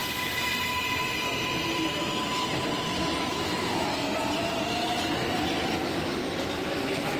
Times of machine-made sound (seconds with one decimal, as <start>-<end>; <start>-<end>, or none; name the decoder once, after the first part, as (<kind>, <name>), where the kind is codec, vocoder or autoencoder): 3.3-3.9 (autoencoder, DAC-VAE); 5.8-6.2